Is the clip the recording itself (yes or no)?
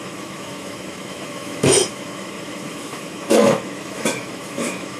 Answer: no